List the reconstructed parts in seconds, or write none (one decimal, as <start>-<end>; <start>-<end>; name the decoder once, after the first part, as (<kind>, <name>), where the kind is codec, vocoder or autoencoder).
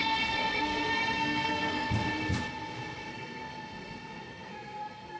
0.0-1.9 (codec, SNAC); 3.1-5.2